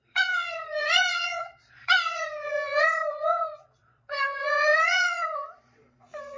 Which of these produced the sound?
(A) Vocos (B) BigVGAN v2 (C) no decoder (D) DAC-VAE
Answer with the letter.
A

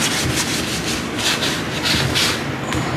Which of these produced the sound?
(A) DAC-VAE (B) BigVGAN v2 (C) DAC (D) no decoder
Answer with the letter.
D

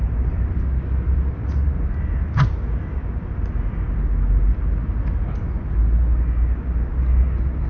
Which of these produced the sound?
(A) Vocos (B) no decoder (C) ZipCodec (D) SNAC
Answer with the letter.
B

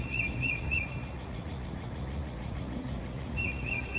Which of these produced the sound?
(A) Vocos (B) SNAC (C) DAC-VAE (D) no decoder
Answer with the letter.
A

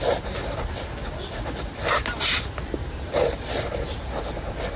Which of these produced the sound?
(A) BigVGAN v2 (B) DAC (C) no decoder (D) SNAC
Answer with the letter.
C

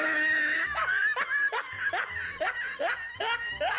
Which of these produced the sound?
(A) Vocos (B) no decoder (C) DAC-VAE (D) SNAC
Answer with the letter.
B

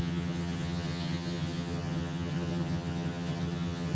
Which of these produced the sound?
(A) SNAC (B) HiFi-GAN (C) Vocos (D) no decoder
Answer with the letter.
B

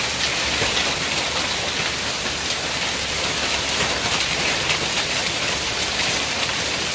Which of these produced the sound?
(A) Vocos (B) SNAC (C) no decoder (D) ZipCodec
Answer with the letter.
C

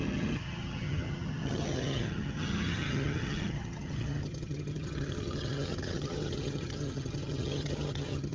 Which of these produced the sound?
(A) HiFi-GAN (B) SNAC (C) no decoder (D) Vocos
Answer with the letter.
A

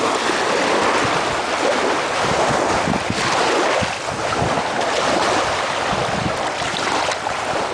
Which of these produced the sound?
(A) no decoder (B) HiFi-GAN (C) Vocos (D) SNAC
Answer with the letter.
A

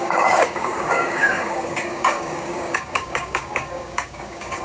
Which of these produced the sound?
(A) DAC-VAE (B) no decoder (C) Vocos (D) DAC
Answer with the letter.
D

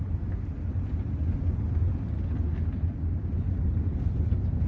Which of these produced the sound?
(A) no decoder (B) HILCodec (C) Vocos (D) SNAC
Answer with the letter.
A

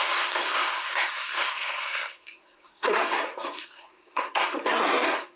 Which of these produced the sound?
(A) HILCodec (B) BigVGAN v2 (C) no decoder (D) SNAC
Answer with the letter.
D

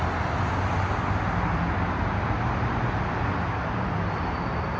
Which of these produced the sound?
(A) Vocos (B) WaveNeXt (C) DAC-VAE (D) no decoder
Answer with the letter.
D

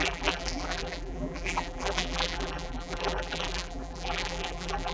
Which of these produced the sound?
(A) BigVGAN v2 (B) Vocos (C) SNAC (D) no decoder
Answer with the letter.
A